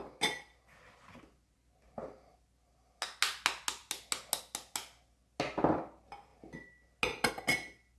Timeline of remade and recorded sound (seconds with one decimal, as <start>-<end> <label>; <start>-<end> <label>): 0.0-8.0 recorded